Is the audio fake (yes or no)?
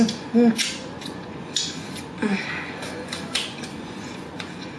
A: yes